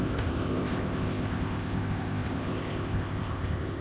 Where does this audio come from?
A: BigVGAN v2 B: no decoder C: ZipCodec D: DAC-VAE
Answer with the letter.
C